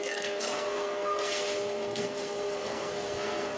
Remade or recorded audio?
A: remade